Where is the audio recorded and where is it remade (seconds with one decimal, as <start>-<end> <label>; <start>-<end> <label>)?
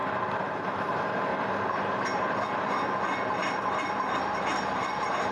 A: 0.0-1.3 recorded; 1.3-2.7 remade; 2.7-5.3 recorded